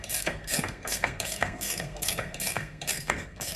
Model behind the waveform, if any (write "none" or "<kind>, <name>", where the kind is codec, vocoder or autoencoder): codec, SNAC